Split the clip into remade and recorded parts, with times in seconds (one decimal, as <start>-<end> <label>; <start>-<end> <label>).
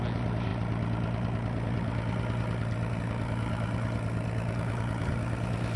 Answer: 0.0-5.8 recorded